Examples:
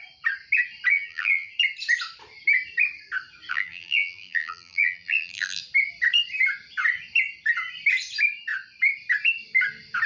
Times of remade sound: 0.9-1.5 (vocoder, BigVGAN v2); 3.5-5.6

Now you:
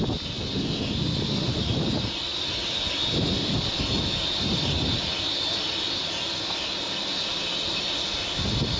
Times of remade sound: none